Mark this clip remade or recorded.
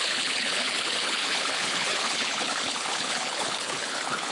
remade